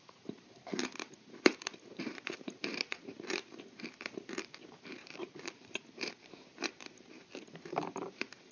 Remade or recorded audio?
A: remade